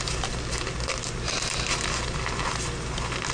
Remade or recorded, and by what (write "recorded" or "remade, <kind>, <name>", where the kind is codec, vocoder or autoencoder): recorded